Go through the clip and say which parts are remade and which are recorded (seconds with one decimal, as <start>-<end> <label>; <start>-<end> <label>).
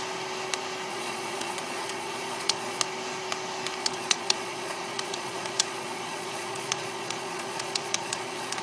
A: 0.0-0.9 recorded; 0.9-2.8 remade; 2.8-3.8 recorded; 3.8-8.6 remade